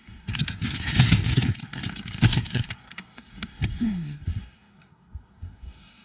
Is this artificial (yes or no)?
yes